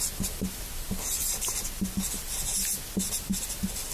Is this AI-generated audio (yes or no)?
no